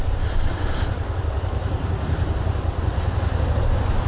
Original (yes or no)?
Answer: yes